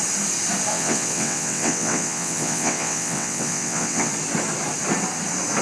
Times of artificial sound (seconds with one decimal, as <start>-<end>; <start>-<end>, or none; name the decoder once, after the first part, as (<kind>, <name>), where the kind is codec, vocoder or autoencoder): 0.7-4.1 (vocoder, WaveNeXt)